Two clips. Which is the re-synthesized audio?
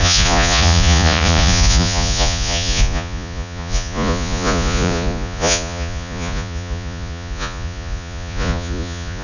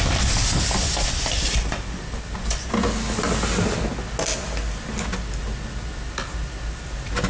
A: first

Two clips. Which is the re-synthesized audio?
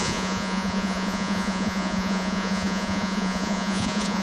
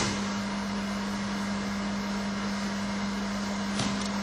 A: first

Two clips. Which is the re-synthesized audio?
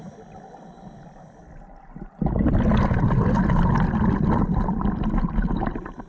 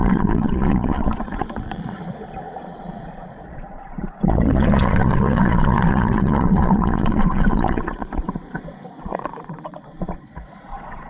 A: second